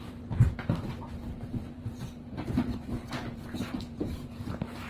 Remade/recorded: remade